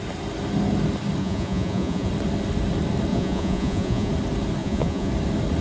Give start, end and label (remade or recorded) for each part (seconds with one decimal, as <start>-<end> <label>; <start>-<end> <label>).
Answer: 0.0-1.2 recorded; 1.2-2.1 remade; 2.1-3.1 recorded; 3.1-4.1 remade; 4.1-4.6 recorded; 4.6-5.1 remade; 5.1-5.6 recorded